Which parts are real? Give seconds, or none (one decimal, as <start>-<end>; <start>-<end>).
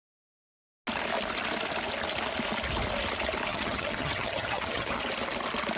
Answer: 0.0-3.5; 5.0-5.8